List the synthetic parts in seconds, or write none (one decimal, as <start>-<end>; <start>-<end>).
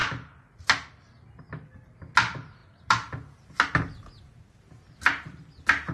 none